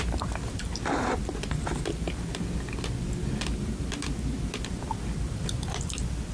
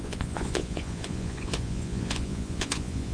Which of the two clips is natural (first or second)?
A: first